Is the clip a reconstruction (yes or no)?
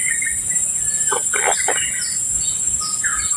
no